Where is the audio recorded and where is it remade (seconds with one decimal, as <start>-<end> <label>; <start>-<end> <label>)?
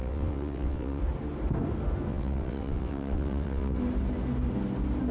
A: 0.0-1.0 remade; 1.0-2.1 recorded; 2.1-3.8 remade; 3.8-5.1 recorded